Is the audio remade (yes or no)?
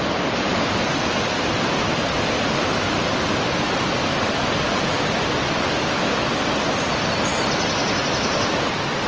no